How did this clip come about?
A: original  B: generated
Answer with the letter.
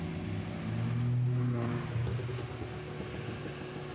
A